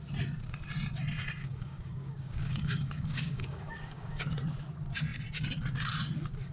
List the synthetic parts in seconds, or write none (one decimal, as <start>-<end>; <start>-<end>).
1.4-4.3